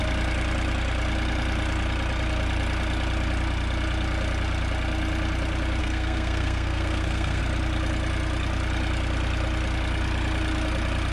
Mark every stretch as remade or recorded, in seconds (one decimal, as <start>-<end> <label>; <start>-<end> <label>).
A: 0.0-5.8 recorded; 5.8-7.4 remade; 7.4-11.1 recorded

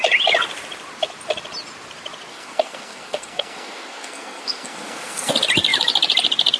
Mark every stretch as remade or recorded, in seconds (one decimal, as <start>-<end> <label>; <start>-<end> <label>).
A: 0.0-2.3 recorded; 2.3-5.3 remade; 5.3-6.6 recorded